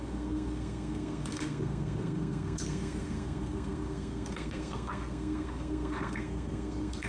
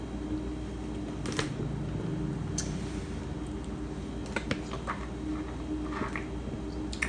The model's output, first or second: first